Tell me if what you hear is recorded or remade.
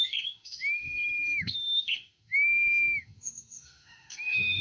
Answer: remade